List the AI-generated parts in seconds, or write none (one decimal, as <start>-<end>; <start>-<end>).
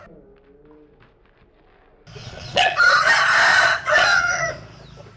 2.2-3.1; 3.5-4.5